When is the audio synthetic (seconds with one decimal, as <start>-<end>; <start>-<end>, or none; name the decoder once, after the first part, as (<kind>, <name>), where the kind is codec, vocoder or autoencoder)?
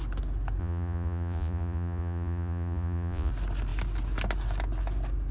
0.6-3.3 (vocoder, Vocos)